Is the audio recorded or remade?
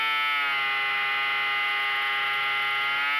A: recorded